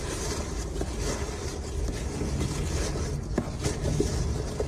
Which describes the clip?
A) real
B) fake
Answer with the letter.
A